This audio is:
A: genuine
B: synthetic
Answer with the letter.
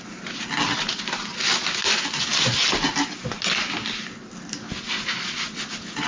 A